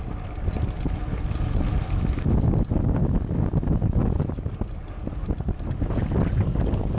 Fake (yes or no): no